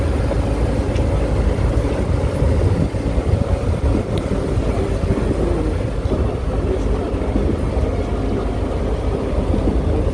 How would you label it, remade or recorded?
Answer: recorded